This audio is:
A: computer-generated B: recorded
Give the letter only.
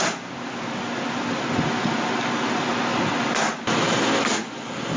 B